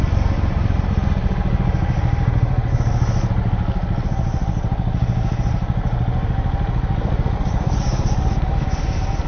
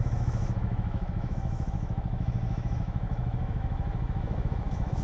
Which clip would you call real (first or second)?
first